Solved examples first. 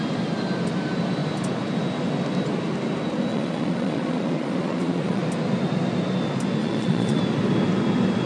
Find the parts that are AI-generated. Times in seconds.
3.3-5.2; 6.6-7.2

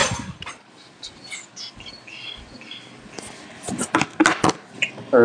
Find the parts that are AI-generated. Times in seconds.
none

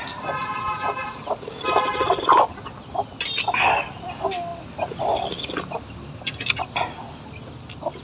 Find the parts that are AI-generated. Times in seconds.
0.4-1.1

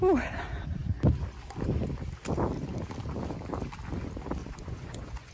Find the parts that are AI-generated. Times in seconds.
4.4-5.3

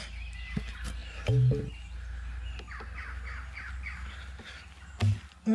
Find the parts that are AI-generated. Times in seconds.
none

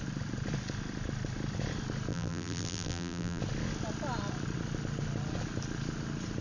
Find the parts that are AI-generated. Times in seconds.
2.1-3.4

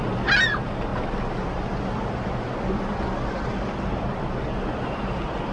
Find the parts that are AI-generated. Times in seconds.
0.0-0.9; 4.2-5.5